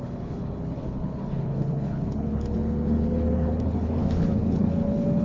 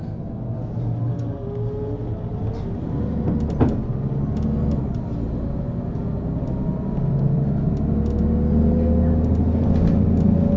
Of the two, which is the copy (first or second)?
first